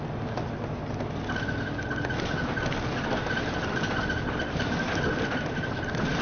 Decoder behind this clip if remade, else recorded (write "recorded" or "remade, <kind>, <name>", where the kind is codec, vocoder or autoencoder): recorded